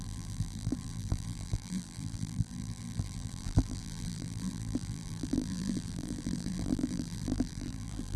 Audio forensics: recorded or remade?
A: remade